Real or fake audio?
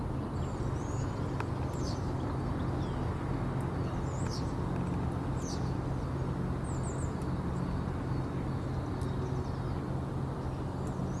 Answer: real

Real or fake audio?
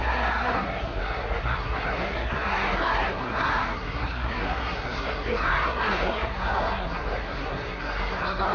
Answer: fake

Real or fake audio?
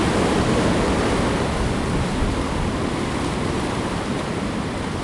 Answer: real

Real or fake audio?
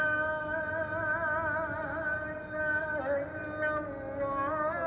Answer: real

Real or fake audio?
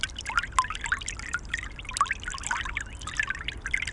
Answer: real